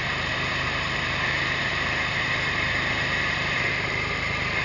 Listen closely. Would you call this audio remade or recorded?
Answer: remade